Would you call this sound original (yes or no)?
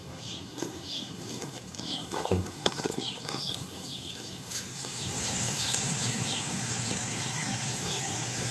no